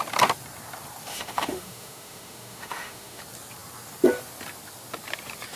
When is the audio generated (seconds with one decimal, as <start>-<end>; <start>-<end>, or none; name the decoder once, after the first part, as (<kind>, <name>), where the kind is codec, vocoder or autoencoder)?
1.1-3.2 (autoencoder, DAC-VAE)